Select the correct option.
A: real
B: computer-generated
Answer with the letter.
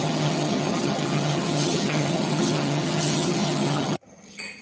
B